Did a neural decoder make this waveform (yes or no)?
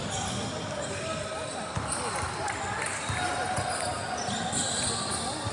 no